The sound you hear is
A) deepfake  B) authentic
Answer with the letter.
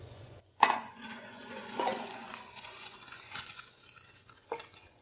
A